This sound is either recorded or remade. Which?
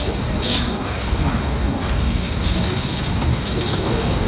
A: remade